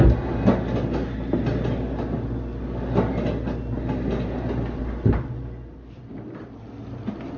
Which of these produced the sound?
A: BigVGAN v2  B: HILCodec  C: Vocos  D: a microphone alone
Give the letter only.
D